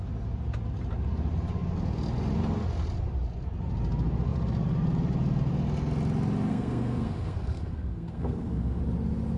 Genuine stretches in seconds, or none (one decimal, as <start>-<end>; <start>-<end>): 0.0-6.5; 8.8-9.4